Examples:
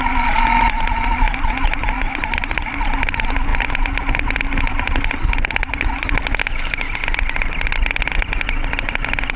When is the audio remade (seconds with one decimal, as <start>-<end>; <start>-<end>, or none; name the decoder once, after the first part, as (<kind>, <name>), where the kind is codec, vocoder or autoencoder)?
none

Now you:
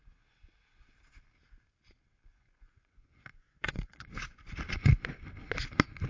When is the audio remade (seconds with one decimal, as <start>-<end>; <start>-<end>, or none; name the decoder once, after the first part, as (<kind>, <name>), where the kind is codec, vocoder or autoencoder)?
2.3-4.9 (vocoder, Vocos)

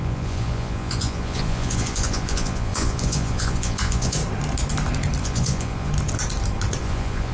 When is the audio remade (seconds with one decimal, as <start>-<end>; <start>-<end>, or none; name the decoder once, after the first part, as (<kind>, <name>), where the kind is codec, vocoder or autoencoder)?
0.0-4.2 (vocoder, Vocos); 5.2-5.9; 6.8-7.3

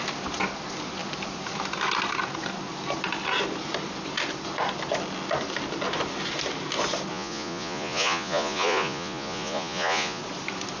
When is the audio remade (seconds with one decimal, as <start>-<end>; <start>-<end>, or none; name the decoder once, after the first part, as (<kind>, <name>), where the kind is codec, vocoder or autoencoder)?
7.1-10.2 (vocoder, Vocos)

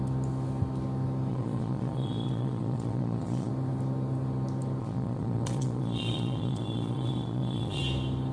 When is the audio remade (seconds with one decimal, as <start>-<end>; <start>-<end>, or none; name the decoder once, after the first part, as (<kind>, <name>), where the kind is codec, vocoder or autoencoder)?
1.3-3.5 (vocoder, Vocos); 4.8-7.8

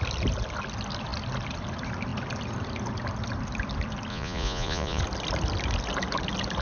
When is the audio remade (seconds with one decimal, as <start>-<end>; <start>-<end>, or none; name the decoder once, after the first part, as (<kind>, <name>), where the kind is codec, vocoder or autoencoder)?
4.1-5.0 (vocoder, Vocos)